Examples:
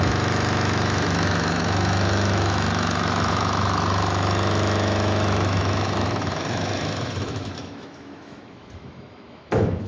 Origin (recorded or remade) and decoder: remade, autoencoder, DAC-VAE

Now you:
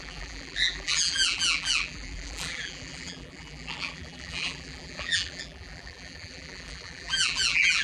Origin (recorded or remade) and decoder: remade, vocoder, BigVGAN v2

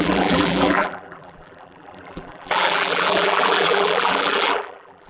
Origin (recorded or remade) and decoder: remade, vocoder, BigVGAN v2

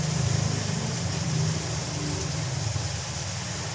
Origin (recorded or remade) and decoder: recorded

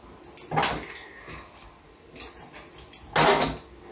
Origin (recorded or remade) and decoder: recorded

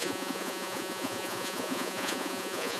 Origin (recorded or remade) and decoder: remade, vocoder, Vocos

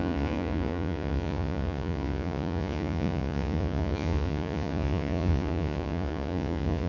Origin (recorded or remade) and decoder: remade, vocoder, Vocos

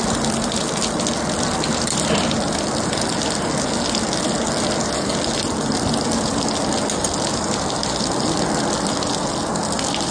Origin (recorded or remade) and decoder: recorded